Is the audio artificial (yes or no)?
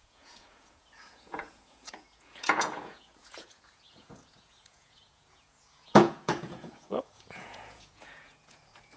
yes